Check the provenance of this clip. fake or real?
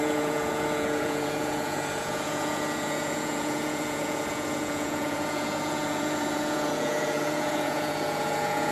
fake